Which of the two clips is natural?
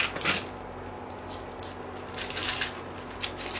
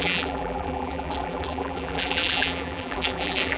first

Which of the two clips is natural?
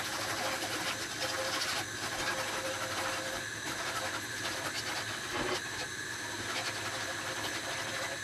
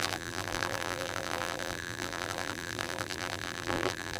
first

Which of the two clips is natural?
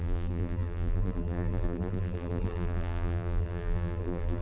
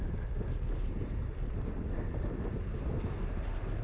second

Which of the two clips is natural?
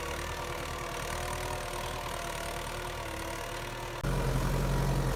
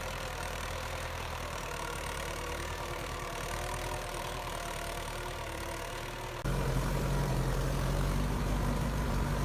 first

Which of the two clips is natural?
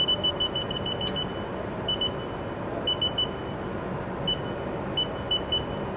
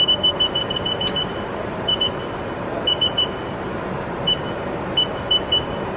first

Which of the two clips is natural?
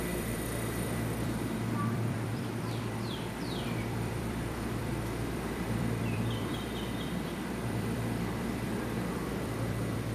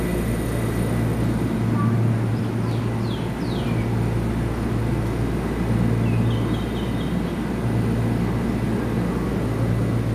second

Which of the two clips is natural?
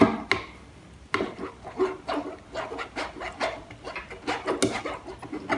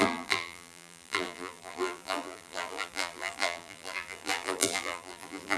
first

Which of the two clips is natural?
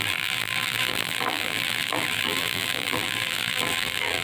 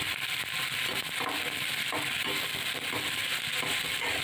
second